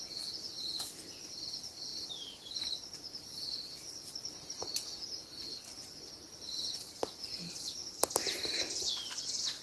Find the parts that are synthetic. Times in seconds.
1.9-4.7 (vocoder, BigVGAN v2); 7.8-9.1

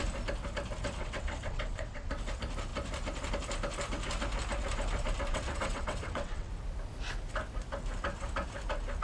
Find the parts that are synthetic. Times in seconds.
1.0-2.1 (vocoder, WaveNeXt); 5.3-6.5

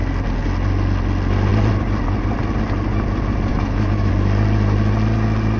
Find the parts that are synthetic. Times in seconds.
3.5-4.1 (autoencoder, DAC-VAE)

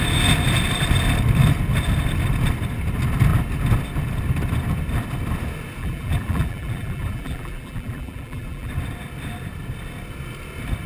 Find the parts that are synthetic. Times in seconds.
5.8-8.7 (vocoder, BigVGAN v2)

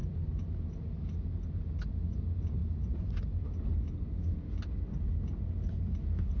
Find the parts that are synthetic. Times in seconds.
none

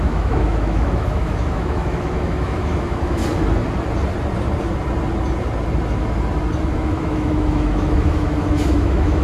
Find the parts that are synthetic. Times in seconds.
0.0-3.2 (autoencoder, DAC-VAE); 6.7-9.2

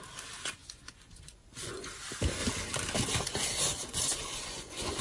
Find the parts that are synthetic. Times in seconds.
0.6-1.9 (vocoder, Vocos); 3.7-5.0